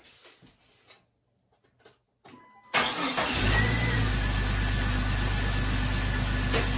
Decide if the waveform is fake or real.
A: real